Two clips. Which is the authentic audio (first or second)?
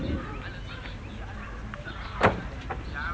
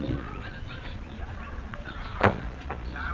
first